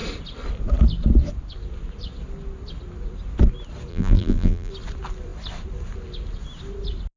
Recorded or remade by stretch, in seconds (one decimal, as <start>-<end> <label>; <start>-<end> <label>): 0.0-3.9 recorded; 3.9-4.7 remade; 4.7-7.2 recorded